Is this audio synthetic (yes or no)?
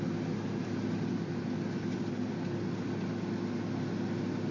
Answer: no